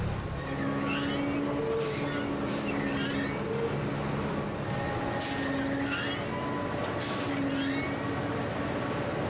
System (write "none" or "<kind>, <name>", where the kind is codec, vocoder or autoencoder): none